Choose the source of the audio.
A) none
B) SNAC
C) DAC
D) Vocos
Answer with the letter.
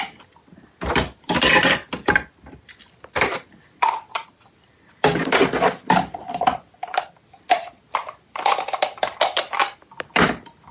A